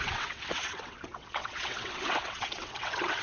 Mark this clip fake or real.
fake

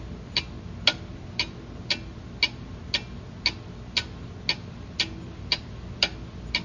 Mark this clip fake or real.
real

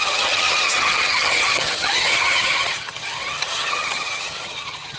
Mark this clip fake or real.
fake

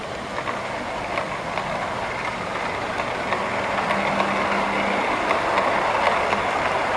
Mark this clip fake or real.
real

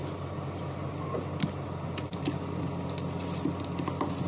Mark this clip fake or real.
real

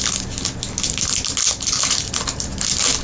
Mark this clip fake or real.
real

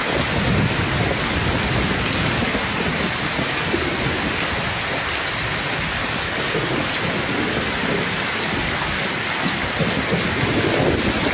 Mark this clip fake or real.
real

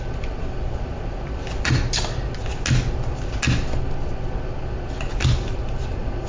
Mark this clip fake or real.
real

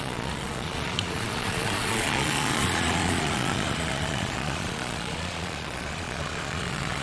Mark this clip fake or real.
fake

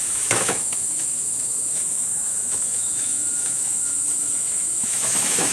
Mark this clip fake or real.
fake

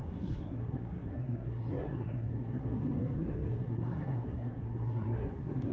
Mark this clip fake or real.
fake